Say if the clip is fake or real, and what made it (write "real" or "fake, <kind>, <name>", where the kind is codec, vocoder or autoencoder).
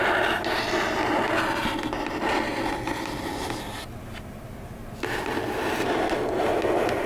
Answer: real